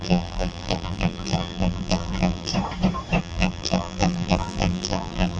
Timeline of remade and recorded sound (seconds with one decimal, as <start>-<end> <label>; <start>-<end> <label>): 0.0-2.5 remade; 2.5-3.2 recorded; 3.2-5.4 remade